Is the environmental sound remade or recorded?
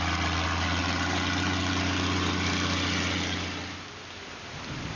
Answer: recorded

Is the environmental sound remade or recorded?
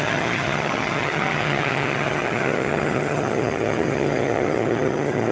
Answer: remade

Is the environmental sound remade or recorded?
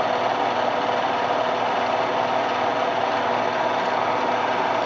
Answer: recorded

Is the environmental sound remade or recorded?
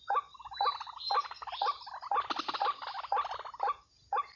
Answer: recorded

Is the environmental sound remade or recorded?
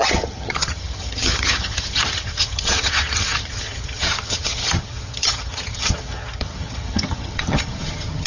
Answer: remade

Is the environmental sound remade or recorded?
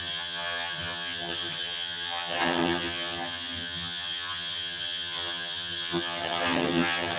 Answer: remade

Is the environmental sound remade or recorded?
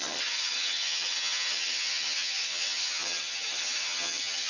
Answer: remade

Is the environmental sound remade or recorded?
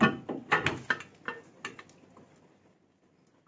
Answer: recorded